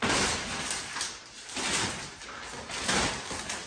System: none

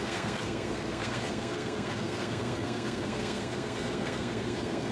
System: codec, SNAC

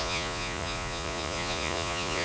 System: vocoder, Vocos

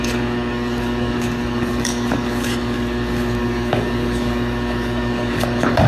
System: codec, DAC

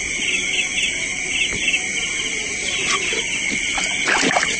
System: none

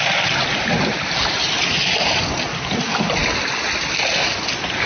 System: none